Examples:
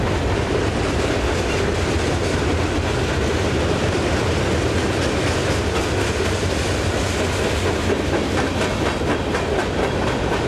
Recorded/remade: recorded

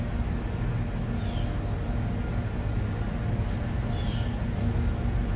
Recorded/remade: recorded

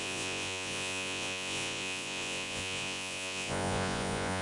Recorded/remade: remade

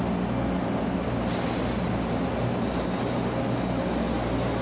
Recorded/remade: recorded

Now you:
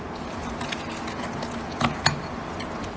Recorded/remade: recorded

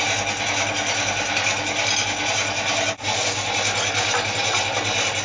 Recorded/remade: recorded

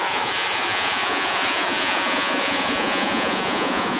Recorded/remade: remade